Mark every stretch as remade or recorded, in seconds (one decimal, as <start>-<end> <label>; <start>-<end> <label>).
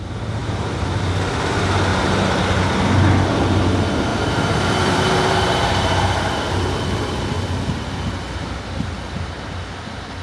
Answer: 0.0-0.4 recorded; 0.4-1.2 remade; 1.2-1.9 recorded; 1.9-2.7 remade; 2.7-4.1 recorded; 4.1-6.2 remade; 6.2-10.2 recorded